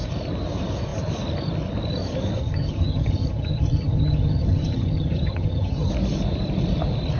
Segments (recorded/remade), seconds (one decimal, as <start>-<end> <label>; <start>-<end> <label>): 0.0-2.4 recorded; 2.4-5.9 remade; 5.9-7.2 recorded